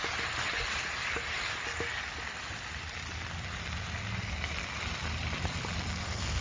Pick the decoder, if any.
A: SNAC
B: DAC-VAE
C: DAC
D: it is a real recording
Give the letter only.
D